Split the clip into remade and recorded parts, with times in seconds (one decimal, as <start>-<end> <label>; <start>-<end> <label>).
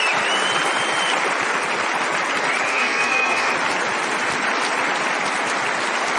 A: 0.0-2.7 recorded; 2.7-3.5 remade; 3.5-6.2 recorded